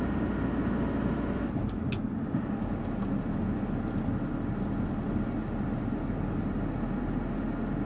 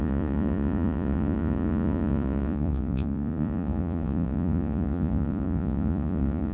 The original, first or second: first